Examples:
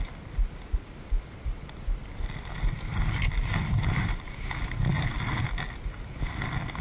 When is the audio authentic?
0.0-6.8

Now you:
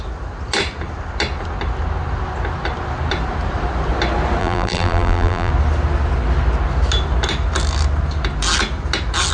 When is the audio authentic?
0.0-4.4; 5.5-9.3

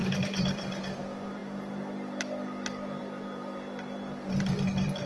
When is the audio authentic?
0.8-5.1

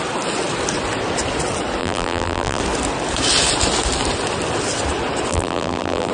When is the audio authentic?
0.0-1.8; 2.6-5.3

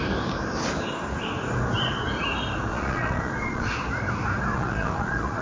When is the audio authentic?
0.0-2.7; 3.7-4.5

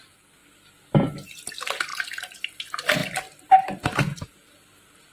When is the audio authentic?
0.0-1.9; 2.6-5.1

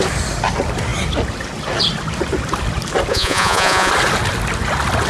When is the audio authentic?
0.0-3.1; 3.9-5.1